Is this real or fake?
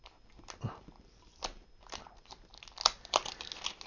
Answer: real